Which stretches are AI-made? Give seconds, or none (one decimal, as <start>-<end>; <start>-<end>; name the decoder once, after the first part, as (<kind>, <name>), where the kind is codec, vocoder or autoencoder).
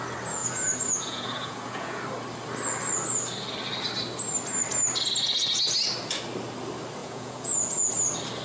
0.4-2.0 (vocoder, Vocos); 7.0-7.9